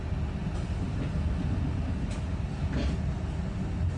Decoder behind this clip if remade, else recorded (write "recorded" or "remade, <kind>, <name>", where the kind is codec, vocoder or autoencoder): recorded